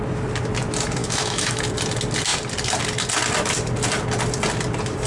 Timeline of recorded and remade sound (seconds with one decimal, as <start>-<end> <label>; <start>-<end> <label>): 0.0-1.0 recorded; 1.0-1.6 remade; 1.6-5.1 recorded